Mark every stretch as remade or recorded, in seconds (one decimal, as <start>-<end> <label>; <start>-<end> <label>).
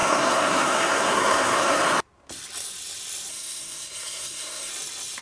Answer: 0.0-1.8 remade; 1.8-3.3 recorded; 3.3-4.7 remade; 4.7-5.2 recorded